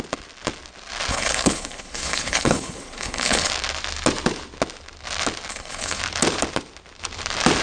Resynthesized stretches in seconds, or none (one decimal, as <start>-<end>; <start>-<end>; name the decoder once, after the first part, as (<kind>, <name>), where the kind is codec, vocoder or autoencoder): 1.1-3.5 (codec, HILCodec); 5.5-6.0